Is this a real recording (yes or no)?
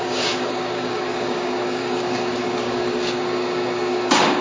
no